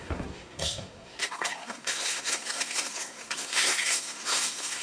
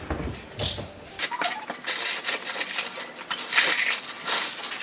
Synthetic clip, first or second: first